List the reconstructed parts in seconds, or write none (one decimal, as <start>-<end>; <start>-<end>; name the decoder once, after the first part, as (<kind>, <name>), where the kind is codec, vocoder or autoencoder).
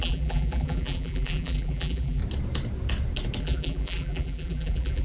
0.0-2.2 (vocoder, BigVGAN v2); 3.4-5.0